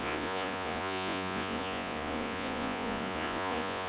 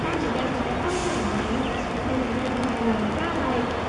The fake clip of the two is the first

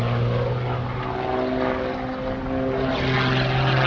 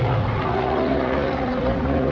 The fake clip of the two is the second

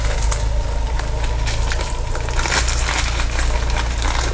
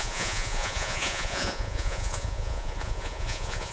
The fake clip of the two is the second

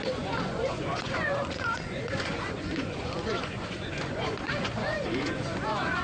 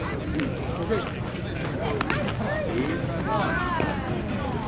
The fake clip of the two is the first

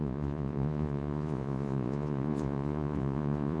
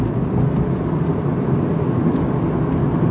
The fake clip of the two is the first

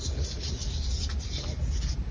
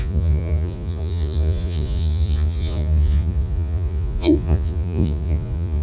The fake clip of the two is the second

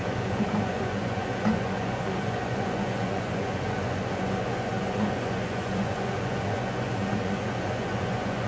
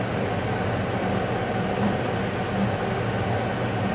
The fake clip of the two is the first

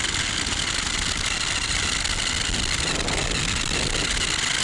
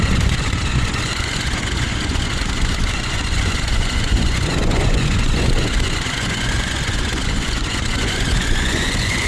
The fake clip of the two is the second